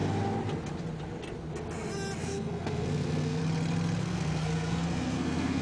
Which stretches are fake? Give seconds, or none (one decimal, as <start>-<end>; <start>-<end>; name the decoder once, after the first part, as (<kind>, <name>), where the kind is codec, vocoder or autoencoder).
2.2-3.4 (codec, SNAC); 4.0-5.6